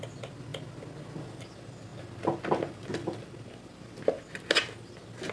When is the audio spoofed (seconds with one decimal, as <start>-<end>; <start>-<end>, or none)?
none